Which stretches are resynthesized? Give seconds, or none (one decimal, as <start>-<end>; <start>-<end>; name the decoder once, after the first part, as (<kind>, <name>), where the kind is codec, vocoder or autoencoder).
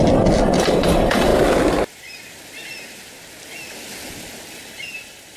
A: 0.0-1.3 (vocoder, BigVGAN v2); 4.5-5.4